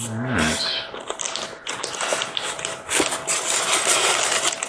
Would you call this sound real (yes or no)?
yes